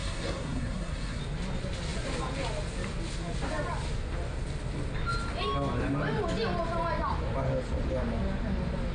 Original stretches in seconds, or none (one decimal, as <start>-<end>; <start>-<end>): 1.2-8.9

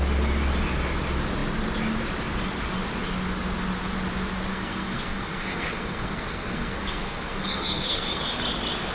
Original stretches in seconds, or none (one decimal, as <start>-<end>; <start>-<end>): 0.0-4.5; 8.3-8.9

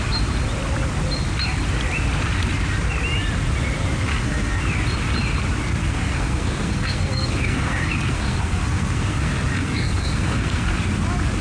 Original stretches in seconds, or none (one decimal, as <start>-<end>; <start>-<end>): 0.0-4.1; 4.6-5.8; 10.7-11.4